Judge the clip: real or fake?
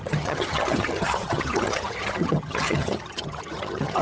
fake